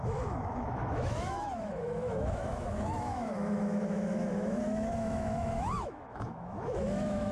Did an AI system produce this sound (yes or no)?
yes